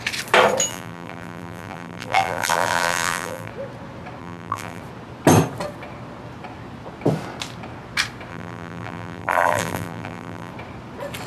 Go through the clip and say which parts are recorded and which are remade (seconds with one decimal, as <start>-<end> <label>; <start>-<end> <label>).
0.0-0.7 recorded; 0.7-3.5 remade; 3.5-4.2 recorded; 4.2-4.8 remade; 4.8-8.3 recorded; 8.3-10.5 remade; 10.5-11.3 recorded